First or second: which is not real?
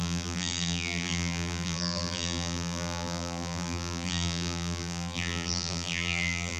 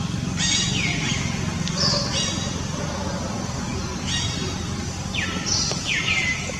first